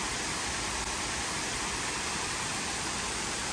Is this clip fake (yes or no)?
yes